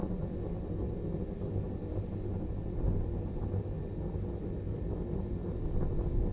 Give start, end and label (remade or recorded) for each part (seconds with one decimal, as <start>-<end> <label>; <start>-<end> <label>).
0.0-6.3 recorded